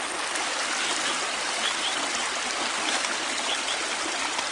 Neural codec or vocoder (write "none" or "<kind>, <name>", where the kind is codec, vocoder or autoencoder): none